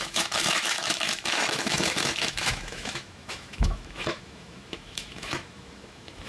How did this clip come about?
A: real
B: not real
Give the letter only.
B